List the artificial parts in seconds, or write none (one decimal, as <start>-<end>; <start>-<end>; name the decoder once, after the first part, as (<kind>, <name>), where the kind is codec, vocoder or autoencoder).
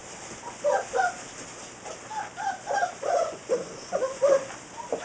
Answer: 3.0-4.4 (vocoder, Vocos)